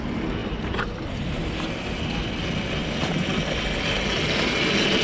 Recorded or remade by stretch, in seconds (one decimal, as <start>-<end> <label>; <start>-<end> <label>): 0.0-0.4 recorded; 0.4-1.8 remade; 1.8-5.0 recorded